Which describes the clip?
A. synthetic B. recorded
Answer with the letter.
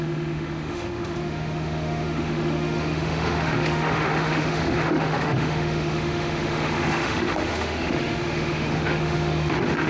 A